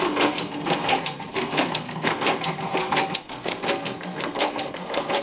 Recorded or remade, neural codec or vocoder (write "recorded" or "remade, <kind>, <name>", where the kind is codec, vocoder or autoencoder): remade, codec, SNAC